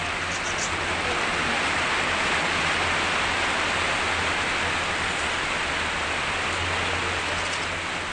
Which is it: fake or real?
real